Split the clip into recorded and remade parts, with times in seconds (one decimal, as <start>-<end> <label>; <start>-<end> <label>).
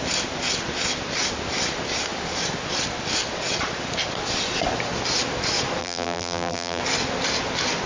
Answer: 0.0-5.8 recorded; 5.8-6.8 remade; 6.8-7.9 recorded